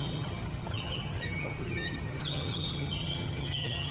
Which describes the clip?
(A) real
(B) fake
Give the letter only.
B